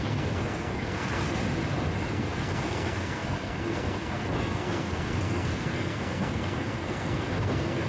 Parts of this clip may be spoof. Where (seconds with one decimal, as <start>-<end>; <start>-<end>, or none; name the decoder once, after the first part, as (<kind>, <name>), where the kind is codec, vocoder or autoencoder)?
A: 0.0-1.4 (codec, SNAC); 2.1-7.9